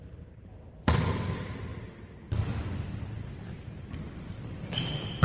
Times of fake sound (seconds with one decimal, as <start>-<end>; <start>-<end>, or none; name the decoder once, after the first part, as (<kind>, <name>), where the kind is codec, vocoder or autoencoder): 0.0-5.2 (vocoder, BigVGAN v2)